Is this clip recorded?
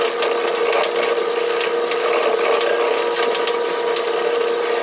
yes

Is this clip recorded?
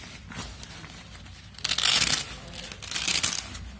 yes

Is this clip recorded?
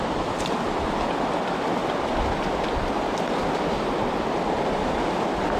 yes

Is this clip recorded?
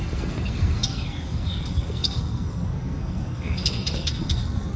no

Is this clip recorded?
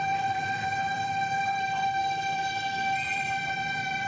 no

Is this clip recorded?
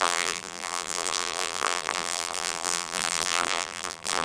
no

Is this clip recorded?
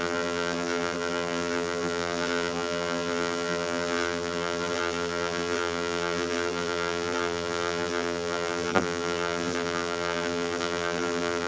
no